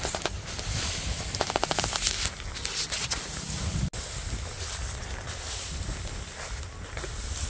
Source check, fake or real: real